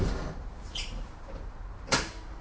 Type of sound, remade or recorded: recorded